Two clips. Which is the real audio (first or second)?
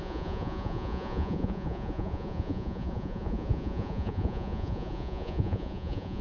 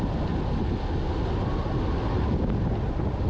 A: second